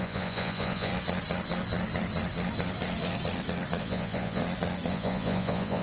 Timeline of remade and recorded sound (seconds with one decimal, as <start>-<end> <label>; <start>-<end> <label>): 0.0-0.9 remade; 0.9-3.8 recorded; 3.8-4.4 remade; 4.4-4.9 recorded; 4.9-5.8 remade

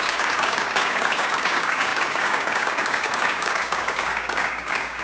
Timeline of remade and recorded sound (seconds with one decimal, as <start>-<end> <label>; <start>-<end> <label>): 0.0-5.0 remade

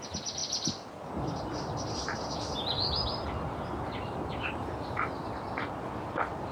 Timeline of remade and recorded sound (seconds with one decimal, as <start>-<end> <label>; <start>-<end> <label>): 0.0-0.4 recorded; 0.4-1.0 remade; 1.0-6.5 recorded

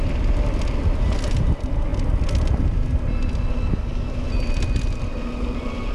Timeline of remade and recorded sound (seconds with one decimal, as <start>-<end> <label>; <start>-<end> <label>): 0.0-5.9 recorded